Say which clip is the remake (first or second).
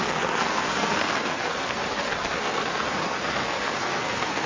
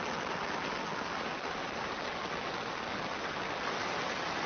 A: first